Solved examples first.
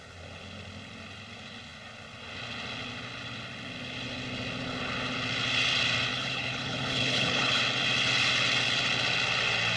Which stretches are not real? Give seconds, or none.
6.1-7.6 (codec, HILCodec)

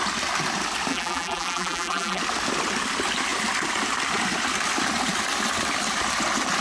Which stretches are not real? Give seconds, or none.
0.9-2.2 (vocoder, BigVGAN v2)